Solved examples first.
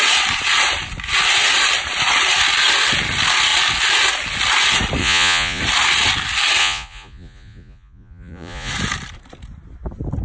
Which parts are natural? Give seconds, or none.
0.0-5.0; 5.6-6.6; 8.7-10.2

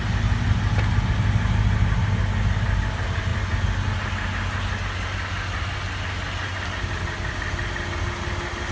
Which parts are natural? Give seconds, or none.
0.0-8.7

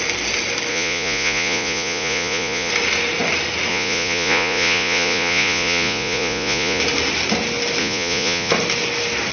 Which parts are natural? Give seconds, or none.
0.0-0.7; 2.7-3.7; 6.8-7.8; 8.5-9.3

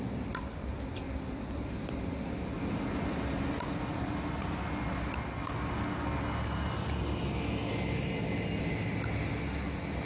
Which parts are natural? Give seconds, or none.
0.0-10.1

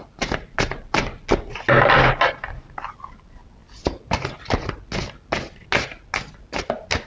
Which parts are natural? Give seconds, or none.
0.0-7.1

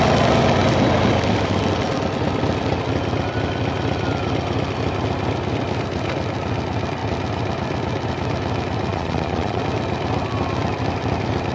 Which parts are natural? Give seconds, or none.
0.0-8.9; 9.6-11.5